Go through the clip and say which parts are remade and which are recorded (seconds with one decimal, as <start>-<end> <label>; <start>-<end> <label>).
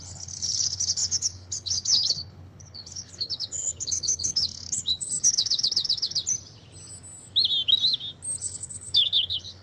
0.0-6.2 remade; 6.2-8.4 recorded; 8.4-9.6 remade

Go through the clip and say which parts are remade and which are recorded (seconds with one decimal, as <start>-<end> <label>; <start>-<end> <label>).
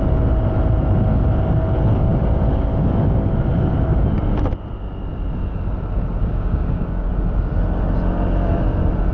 0.0-6.2 recorded; 6.2-7.1 remade; 7.1-9.1 recorded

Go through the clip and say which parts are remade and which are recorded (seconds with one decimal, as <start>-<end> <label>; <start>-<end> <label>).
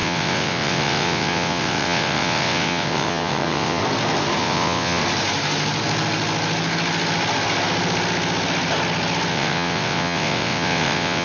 0.0-3.8 remade; 3.8-4.4 recorded; 4.4-5.0 remade; 5.0-9.3 recorded; 9.3-11.2 remade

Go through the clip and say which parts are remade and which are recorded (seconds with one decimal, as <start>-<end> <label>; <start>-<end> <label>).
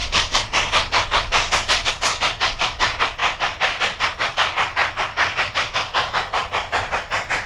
0.0-1.9 remade; 1.9-7.5 recorded